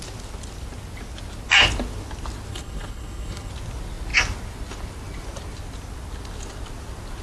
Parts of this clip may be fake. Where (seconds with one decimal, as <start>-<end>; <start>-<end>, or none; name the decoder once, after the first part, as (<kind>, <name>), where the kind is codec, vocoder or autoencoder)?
2.5-3.5 (codec, HILCodec)